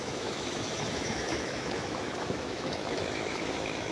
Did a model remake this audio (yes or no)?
yes